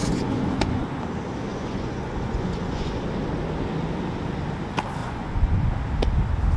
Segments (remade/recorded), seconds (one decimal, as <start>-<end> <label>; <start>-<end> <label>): 0.0-1.0 remade; 1.0-1.5 recorded; 1.5-3.0 remade; 3.0-5.0 recorded; 5.0-5.7 remade; 5.7-6.6 recorded